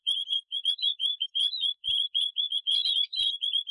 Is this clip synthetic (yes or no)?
yes